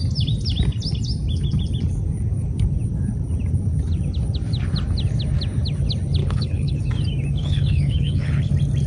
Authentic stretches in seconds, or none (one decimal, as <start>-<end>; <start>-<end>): 0.0-6.2; 6.8-7.4; 8.5-8.9